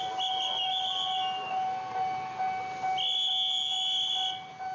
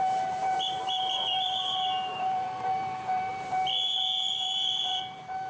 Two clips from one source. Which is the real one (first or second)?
first